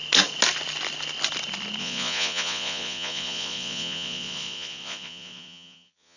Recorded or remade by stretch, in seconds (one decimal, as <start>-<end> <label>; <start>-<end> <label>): 0.0-1.8 recorded; 1.8-6.2 remade